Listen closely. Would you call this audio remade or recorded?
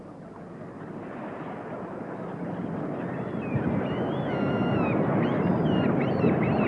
recorded